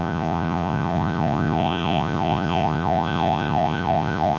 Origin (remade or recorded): remade